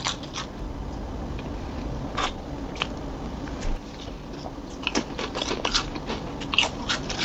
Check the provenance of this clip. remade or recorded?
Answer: recorded